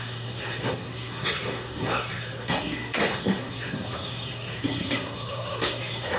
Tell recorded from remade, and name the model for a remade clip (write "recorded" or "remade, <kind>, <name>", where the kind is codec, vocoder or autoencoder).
remade, codec, SNAC